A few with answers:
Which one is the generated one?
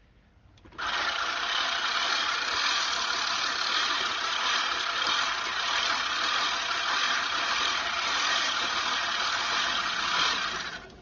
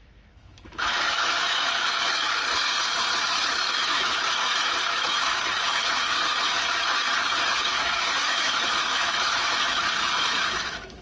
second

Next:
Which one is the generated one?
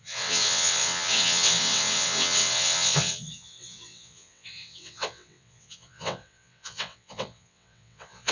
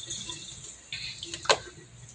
first